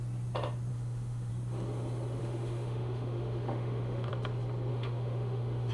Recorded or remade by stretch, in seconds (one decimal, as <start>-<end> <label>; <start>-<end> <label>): 0.0-0.7 recorded; 0.7-1.3 remade; 1.3-2.2 recorded; 2.2-4.1 remade; 4.1-4.7 recorded; 4.7-5.7 remade